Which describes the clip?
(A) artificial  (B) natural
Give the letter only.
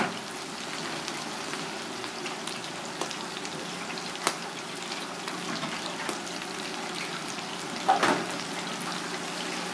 B